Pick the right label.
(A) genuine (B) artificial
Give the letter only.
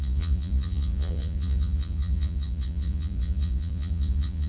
B